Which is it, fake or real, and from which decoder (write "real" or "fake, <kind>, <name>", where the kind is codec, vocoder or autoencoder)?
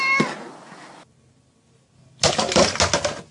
real